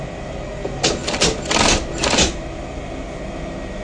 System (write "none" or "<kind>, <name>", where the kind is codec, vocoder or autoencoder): none